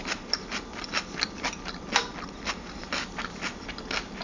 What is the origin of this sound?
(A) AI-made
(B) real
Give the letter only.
B